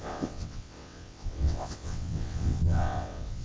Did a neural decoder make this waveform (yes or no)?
yes